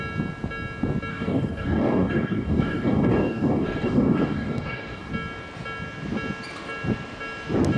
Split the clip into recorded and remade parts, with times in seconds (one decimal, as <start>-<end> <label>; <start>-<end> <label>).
0.0-1.1 recorded; 1.1-5.1 remade; 5.1-7.8 recorded